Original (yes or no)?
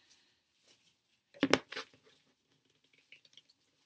yes